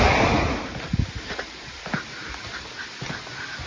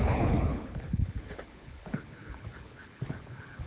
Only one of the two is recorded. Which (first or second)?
first